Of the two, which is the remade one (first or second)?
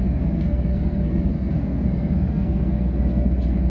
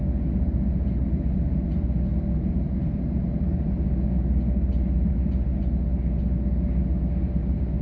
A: first